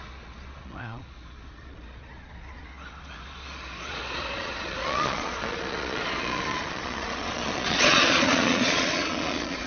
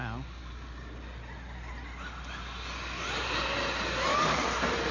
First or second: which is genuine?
second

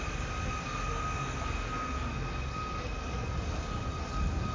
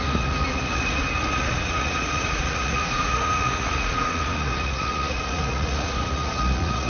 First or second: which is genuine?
first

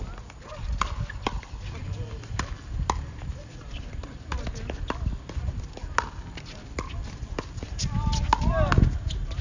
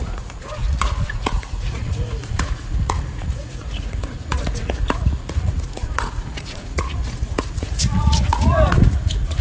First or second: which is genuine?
first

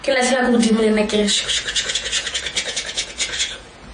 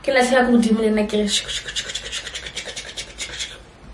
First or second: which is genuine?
second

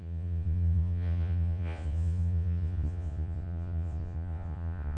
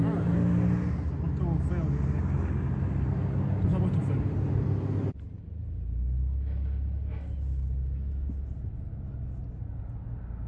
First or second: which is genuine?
second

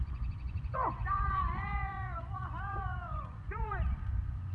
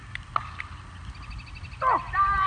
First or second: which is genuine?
second